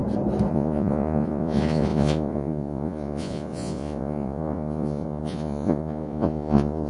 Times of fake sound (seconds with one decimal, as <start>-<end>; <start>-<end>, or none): 0.5-6.9